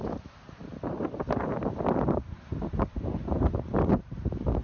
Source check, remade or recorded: remade